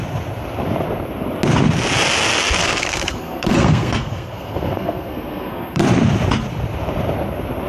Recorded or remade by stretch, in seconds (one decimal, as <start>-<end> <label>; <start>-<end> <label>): 0.0-2.6 recorded; 2.6-5.8 remade; 5.8-7.7 recorded